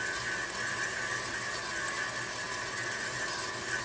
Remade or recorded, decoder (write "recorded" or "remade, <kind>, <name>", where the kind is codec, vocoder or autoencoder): recorded